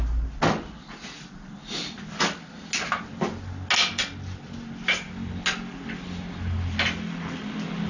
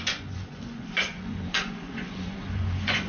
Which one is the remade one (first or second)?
second